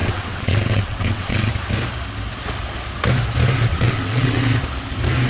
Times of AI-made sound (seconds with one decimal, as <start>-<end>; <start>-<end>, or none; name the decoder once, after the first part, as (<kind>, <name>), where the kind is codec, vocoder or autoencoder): 0.0-1.5 (vocoder, WaveNeXt); 3.7-4.4